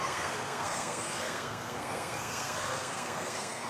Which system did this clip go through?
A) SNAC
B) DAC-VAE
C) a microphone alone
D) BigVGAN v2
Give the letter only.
A